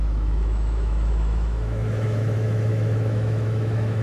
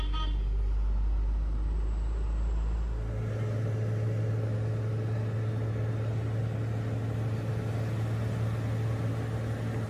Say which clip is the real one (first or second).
second